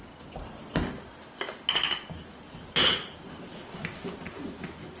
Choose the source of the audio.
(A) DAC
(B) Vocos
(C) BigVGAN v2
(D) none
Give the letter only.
D